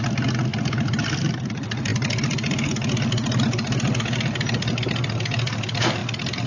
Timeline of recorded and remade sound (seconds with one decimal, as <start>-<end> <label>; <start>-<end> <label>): 0.0-6.5 recorded